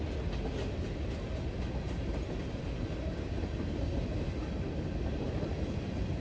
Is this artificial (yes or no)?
no